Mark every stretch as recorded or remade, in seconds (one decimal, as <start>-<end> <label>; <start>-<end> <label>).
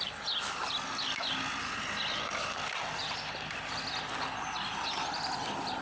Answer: 0.0-0.6 remade; 0.6-1.6 recorded; 1.6-3.0 remade; 3.0-4.7 recorded; 4.7-5.8 remade